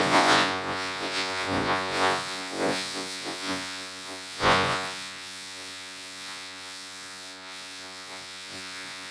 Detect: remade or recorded remade